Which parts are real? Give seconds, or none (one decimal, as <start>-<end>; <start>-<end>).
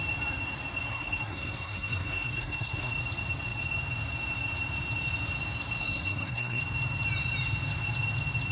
0.0-0.9; 2.9-5.8; 6.6-8.5